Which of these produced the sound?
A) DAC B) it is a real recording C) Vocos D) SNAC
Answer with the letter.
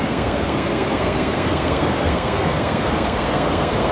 D